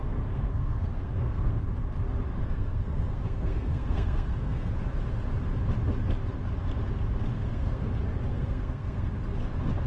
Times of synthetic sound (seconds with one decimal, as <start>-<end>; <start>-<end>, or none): 0.0-1.6; 2.4-4.7; 7.3-7.9; 8.3-9.1